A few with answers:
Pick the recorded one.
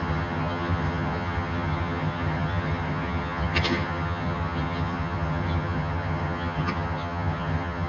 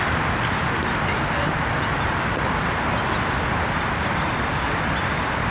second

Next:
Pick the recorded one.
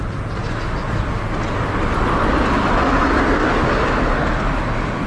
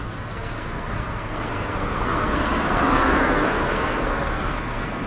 first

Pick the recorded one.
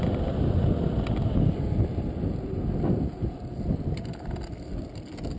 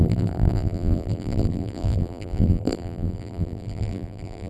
first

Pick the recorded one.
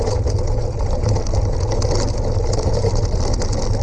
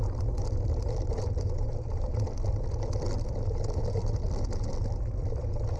first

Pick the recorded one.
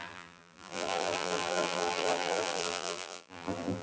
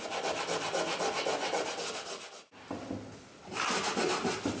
second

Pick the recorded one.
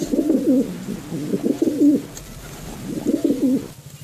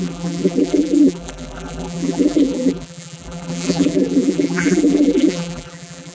first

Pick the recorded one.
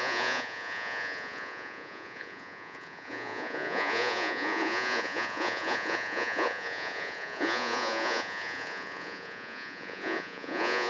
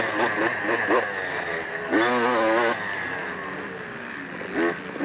second